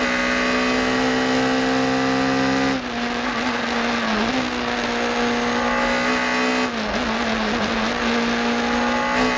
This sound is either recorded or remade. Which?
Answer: recorded